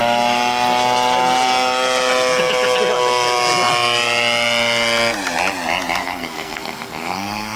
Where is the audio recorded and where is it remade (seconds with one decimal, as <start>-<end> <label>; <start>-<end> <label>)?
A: 0.0-6.0 recorded; 6.0-7.6 remade